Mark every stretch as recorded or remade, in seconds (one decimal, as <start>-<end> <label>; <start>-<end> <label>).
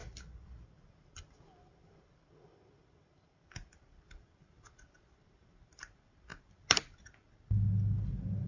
0.0-8.5 recorded